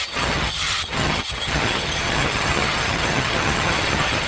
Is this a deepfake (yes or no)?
yes